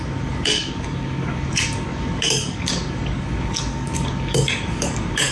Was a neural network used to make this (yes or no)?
yes